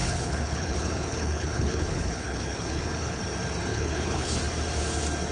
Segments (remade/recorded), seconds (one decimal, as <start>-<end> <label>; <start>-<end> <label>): 0.0-3.2 remade; 3.2-3.7 recorded; 3.7-4.4 remade; 4.4-5.3 recorded

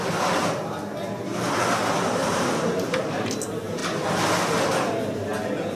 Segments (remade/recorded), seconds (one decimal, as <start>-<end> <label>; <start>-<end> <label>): 0.0-1.3 recorded; 1.3-3.3 remade; 3.3-5.7 recorded

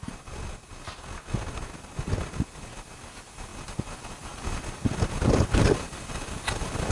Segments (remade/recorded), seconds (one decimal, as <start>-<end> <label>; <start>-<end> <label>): 0.0-6.9 recorded

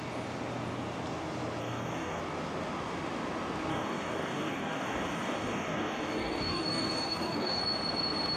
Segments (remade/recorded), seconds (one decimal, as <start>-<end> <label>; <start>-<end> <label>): 0.0-1.6 recorded; 1.6-2.2 remade; 2.2-3.7 recorded; 3.7-7.6 remade; 7.6-8.4 recorded

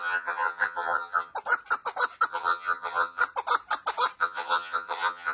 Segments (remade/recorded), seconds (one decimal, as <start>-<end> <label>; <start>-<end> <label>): 0.0-1.3 remade; 1.3-2.3 recorded; 2.3-3.2 remade; 3.2-4.2 recorded; 4.2-5.3 remade